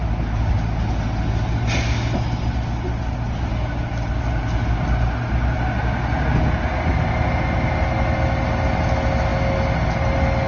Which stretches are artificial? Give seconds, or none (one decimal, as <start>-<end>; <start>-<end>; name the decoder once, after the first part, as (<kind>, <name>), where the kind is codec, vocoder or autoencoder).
none